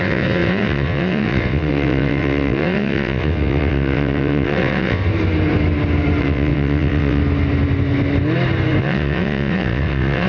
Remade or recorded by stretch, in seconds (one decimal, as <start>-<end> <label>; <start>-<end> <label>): 0.0-5.0 remade; 5.0-6.2 recorded; 6.2-7.2 remade; 7.2-8.8 recorded; 8.8-10.3 remade